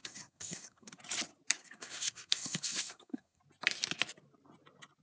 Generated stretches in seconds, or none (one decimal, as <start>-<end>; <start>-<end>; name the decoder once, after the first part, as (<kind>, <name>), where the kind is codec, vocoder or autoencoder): 0.0-1.0 (codec, SNAC); 1.6-3.4